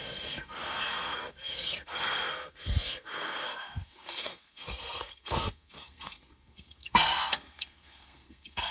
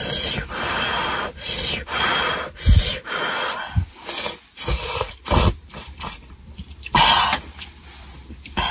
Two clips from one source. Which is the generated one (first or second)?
first